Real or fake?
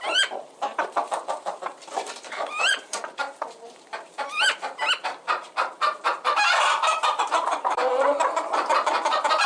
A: fake